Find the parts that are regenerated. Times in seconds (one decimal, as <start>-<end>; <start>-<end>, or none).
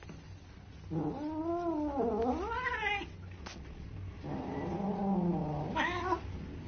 none